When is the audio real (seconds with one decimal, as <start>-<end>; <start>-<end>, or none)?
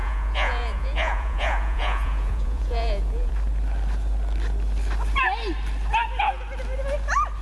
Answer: 3.3-7.4